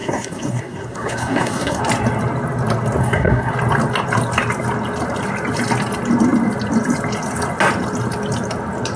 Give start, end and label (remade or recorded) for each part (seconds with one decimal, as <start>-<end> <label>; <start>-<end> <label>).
0.0-1.8 remade; 1.8-3.0 recorded; 3.0-3.5 remade; 3.5-9.0 recorded